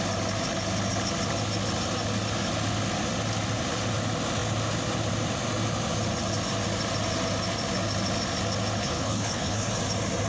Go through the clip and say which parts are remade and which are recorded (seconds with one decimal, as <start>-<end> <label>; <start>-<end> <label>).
0.0-8.8 recorded; 8.8-9.7 remade; 9.7-10.3 recorded